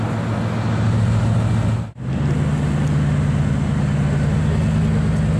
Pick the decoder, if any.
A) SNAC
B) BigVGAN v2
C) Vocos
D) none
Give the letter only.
D